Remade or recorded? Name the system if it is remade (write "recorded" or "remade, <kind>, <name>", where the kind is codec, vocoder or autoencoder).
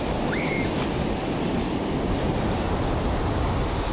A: recorded